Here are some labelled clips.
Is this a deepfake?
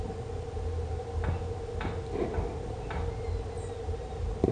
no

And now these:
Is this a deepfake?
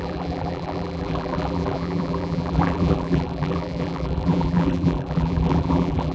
yes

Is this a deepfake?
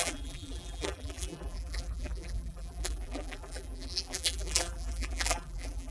yes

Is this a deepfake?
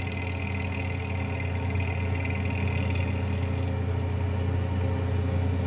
no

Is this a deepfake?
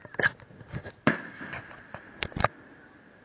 yes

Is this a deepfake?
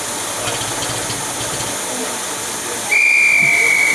no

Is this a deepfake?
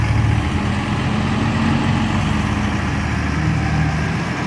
no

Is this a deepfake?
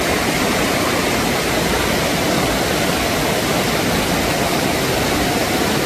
no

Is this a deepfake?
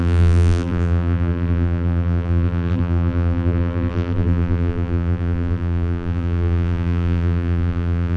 yes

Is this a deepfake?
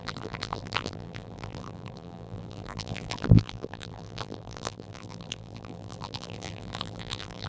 yes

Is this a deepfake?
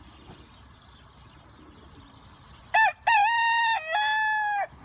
no